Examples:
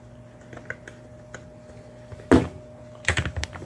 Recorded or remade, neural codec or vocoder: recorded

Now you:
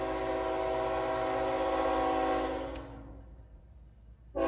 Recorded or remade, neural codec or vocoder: recorded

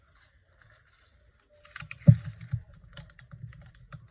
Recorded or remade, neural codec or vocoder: recorded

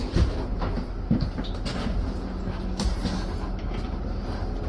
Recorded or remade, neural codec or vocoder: recorded